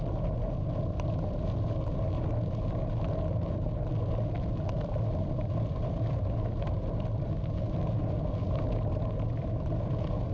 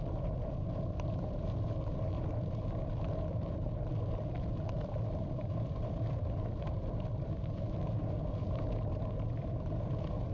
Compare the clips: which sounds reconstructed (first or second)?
second